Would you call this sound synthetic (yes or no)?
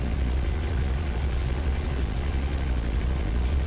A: yes